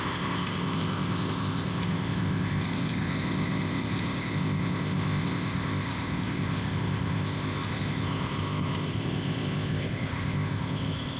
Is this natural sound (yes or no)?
no